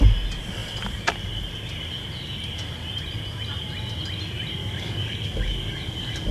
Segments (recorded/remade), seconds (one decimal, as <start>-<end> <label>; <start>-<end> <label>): 0.0-4.6 recorded; 4.6-6.3 remade